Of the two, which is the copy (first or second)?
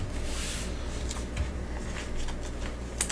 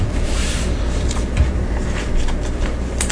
second